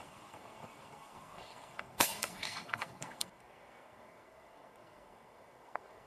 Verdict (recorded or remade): remade